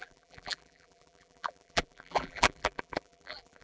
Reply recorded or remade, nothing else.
remade